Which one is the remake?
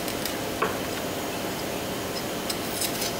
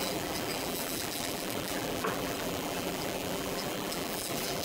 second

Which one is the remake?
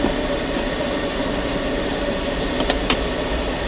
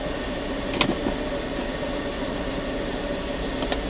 first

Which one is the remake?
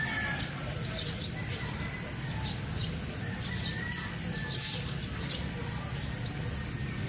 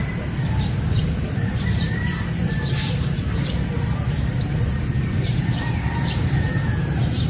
second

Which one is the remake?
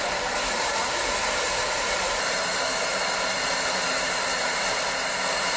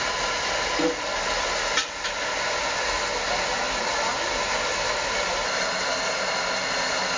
first